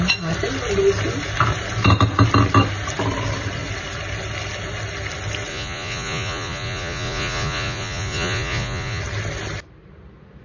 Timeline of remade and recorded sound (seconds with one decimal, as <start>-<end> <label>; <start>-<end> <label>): 0.0-5.5 recorded; 5.5-9.0 remade; 9.0-10.4 recorded